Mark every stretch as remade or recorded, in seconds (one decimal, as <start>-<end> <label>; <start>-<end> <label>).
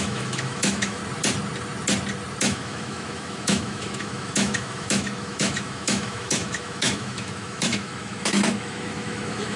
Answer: 0.0-1.0 remade; 1.0-2.4 recorded; 2.4-9.6 remade